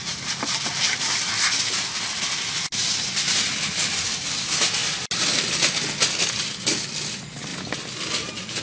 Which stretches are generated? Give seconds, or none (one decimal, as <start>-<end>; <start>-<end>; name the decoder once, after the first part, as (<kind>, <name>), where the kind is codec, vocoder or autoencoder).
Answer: 0.0-1.2 (vocoder, BigVGAN v2)